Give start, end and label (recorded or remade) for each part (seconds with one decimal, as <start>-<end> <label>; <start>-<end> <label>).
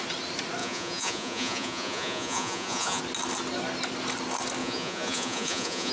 0.0-0.6 recorded; 0.6-3.0 remade; 3.0-4.6 recorded; 4.6-5.9 remade